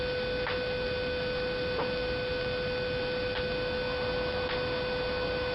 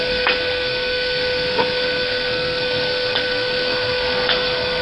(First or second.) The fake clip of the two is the second